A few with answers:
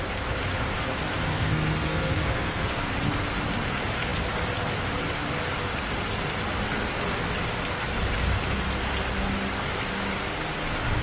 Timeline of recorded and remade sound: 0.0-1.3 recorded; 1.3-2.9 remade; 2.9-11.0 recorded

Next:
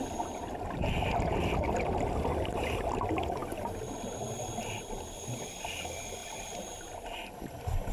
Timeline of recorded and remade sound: 0.0-7.9 recorded

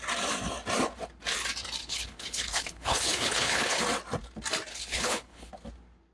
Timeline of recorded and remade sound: 0.0-1.8 recorded; 1.8-3.8 remade; 3.8-4.7 recorded; 4.7-5.5 remade; 5.5-6.1 recorded

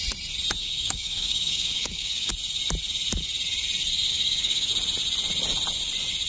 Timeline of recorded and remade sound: 0.0-0.6 recorded; 0.6-2.3 remade; 2.3-4.1 recorded; 4.1-4.7 remade; 4.7-6.3 recorded

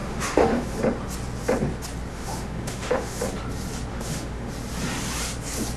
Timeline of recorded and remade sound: 0.0-0.8 remade; 0.8-2.1 recorded; 2.1-3.2 remade; 3.2-3.9 recorded; 3.9-4.5 remade; 4.5-5.8 recorded

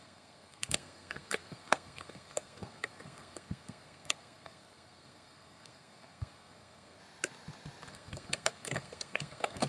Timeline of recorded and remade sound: 0.0-7.0 remade; 7.0-7.9 recorded; 7.9-9.7 remade

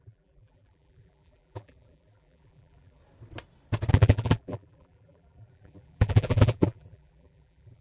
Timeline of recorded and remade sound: 0.0-3.0 remade; 3.0-3.9 recorded; 3.9-7.8 remade

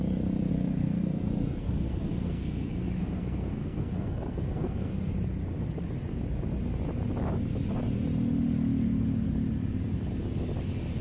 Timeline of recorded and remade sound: 0.0-0.5 recorded; 0.5-5.1 remade; 5.1-11.0 recorded